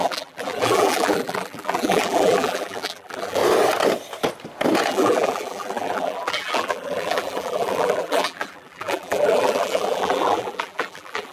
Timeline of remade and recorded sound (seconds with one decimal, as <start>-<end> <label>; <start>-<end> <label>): 0.0-3.4 remade; 3.4-4.9 recorded; 4.9-11.3 remade